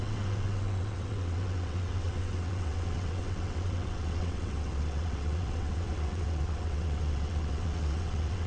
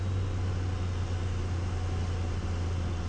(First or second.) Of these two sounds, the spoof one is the first